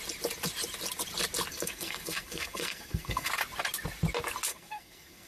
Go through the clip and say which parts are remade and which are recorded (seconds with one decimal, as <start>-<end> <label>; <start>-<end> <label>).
0.0-1.5 recorded; 1.5-3.3 remade; 3.3-4.5 recorded; 4.5-5.3 remade